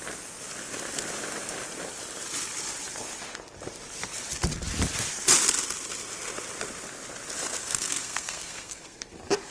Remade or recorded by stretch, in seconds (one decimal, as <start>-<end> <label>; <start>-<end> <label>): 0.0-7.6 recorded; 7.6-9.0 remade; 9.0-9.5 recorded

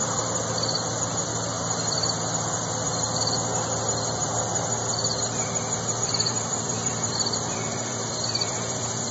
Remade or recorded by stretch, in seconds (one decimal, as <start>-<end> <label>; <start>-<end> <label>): 0.0-1.3 remade; 1.3-6.0 recorded; 6.0-9.1 remade

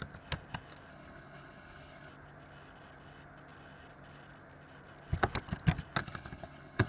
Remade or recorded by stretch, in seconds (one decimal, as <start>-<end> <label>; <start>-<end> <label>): 0.0-0.9 recorded; 0.9-2.1 remade; 2.1-6.0 recorded; 6.0-6.9 remade